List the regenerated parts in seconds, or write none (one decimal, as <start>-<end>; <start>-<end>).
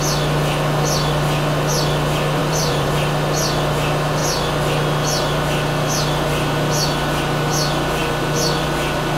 2.4-2.9